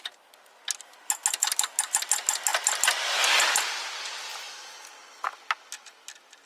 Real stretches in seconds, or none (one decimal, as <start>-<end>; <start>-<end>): 0.0-6.5